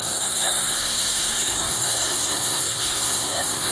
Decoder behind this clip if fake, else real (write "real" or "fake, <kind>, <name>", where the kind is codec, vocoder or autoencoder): fake, codec, SNAC